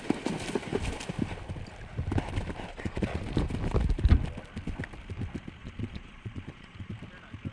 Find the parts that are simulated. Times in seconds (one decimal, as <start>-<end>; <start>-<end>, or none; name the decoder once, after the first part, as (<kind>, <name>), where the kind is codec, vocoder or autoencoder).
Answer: 2.7-3.2 (vocoder, Vocos); 5.6-6.9